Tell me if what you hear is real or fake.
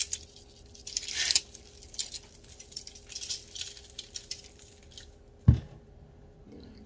real